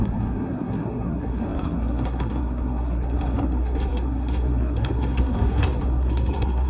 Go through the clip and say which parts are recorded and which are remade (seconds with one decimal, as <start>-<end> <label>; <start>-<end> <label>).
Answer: 0.0-6.7 remade